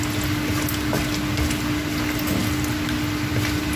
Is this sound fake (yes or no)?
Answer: no